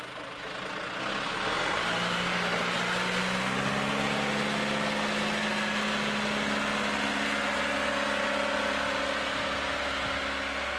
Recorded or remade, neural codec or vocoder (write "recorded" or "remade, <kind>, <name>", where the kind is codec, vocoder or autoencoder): recorded